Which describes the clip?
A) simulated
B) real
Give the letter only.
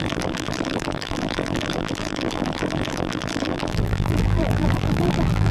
A